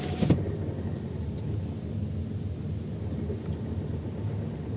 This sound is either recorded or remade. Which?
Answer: recorded